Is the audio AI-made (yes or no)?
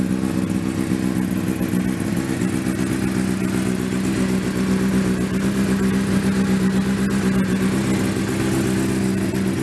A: no